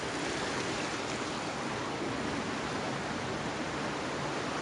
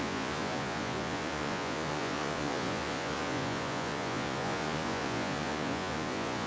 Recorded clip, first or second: first